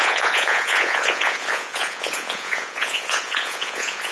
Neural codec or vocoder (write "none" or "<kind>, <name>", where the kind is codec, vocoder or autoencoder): vocoder, Vocos